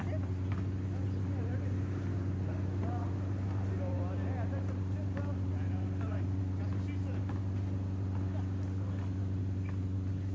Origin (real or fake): real